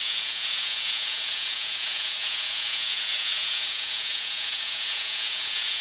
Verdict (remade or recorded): remade